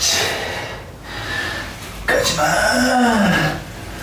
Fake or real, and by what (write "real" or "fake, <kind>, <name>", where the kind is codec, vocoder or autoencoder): real